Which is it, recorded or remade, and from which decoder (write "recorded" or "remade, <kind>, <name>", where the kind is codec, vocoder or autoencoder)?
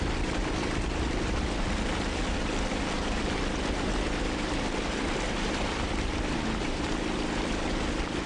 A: recorded